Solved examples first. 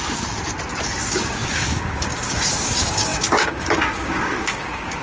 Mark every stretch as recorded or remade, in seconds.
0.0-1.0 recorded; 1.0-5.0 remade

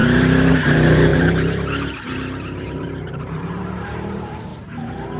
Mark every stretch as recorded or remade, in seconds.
0.0-0.5 recorded; 0.5-4.5 remade; 4.5-5.2 recorded

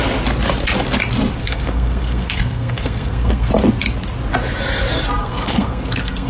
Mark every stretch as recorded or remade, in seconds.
0.0-1.4 recorded; 1.4-3.5 remade; 3.5-5.2 recorded; 5.2-6.3 remade

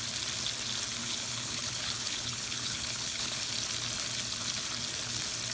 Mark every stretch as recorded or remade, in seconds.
0.0-1.0 recorded; 1.0-3.5 remade; 3.5-5.5 recorded

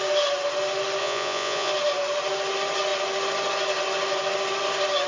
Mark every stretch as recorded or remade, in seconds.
0.0-1.0 recorded; 1.0-1.7 remade; 1.7-5.1 recorded

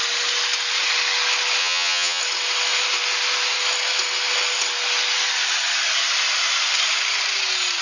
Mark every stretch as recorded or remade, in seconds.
0.0-1.6 recorded; 1.6-2.2 remade; 2.2-7.8 recorded

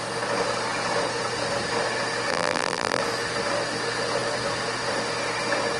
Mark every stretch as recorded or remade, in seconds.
0.0-2.3 recorded; 2.3-3.0 remade; 3.0-5.8 recorded

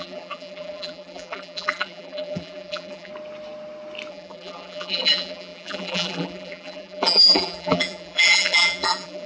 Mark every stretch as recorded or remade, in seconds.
0.0-3.1 remade; 3.1-4.1 recorded; 4.1-9.3 remade